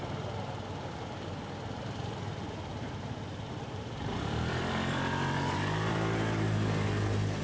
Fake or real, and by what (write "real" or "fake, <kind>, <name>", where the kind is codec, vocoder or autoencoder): fake, vocoder, BigVGAN v2